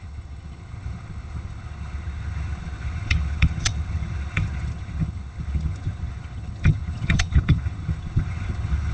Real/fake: fake